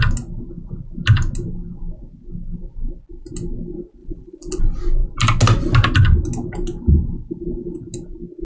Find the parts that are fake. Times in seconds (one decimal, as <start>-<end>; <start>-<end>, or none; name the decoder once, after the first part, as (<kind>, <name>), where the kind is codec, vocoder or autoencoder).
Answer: 4.0-4.6 (vocoder, BigVGAN v2)